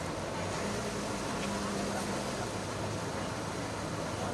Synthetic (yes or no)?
no